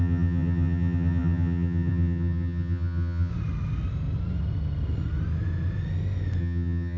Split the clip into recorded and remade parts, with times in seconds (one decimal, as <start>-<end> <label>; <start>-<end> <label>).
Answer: 0.0-3.3 remade; 3.3-6.4 recorded; 6.4-7.0 remade